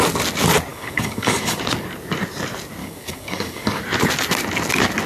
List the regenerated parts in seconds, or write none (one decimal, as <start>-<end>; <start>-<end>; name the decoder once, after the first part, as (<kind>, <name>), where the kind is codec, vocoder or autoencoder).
0.7-1.6 (codec, DAC); 2.8-3.8